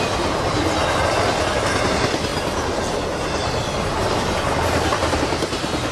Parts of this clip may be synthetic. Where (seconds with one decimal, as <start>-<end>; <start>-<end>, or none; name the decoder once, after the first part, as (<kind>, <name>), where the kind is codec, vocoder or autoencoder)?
none